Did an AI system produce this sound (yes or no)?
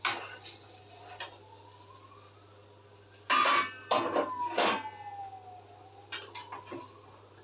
no